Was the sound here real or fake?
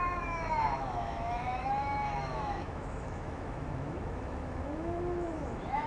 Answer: fake